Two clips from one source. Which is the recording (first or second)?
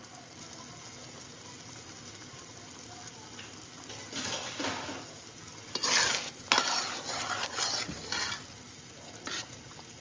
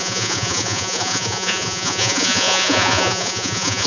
first